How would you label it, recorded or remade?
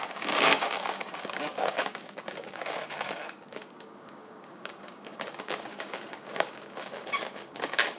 remade